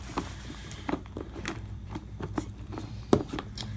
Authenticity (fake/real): fake